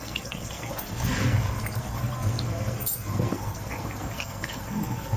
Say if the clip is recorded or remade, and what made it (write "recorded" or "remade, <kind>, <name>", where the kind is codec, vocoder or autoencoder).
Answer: remade, codec, SNAC